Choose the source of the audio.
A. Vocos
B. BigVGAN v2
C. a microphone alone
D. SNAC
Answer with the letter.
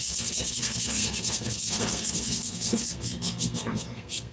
D